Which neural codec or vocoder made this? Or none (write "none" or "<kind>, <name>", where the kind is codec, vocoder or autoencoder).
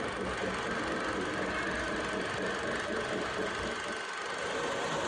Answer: none